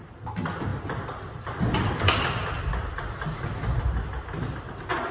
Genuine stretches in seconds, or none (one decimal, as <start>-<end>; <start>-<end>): 0.0-5.1